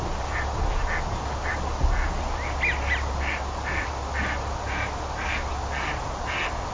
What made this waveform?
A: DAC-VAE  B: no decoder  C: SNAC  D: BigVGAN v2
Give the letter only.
B